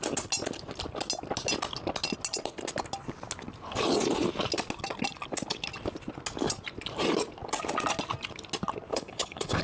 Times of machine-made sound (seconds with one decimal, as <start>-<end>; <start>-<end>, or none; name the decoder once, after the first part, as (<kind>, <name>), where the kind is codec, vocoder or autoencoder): 8.9-9.6 (codec, HILCodec)